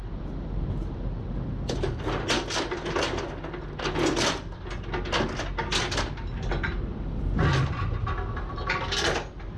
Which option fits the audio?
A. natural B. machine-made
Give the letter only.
A